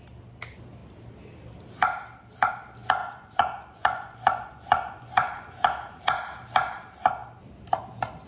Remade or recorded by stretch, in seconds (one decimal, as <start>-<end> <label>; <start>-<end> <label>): 0.0-3.0 recorded; 3.0-6.0 remade; 6.0-8.3 recorded